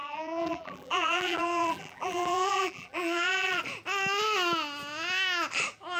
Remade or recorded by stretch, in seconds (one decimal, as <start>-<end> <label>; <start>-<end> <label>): 0.0-3.6 remade; 3.6-6.0 recorded